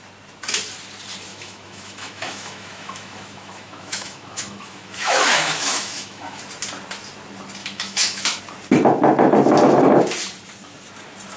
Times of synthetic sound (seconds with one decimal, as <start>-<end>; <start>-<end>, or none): 1.3-6.4; 7.6-8.4